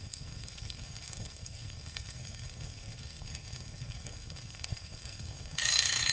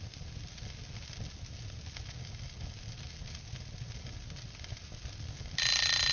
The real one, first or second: second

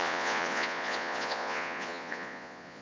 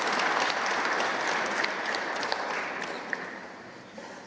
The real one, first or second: second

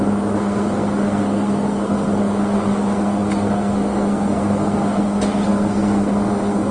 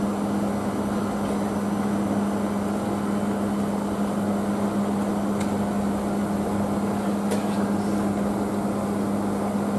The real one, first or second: second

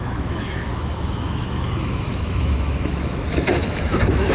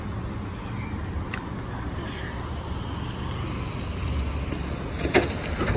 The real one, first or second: second